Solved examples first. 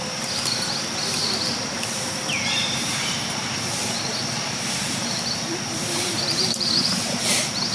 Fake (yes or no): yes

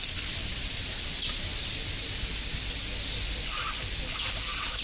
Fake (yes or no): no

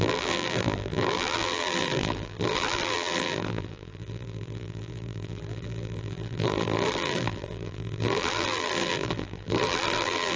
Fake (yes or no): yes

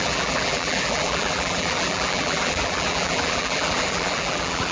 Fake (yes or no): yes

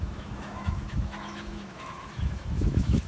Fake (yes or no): yes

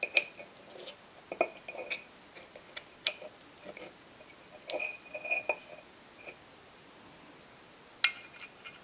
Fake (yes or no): no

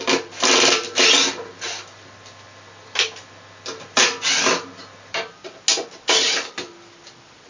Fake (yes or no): no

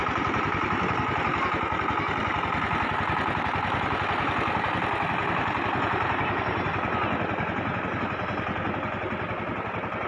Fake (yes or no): no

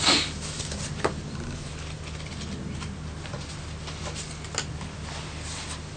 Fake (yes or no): no